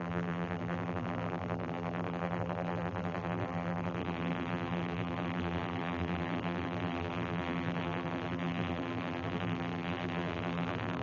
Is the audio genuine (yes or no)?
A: no